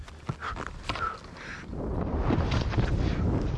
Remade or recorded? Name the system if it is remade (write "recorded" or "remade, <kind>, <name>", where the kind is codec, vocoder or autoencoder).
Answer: recorded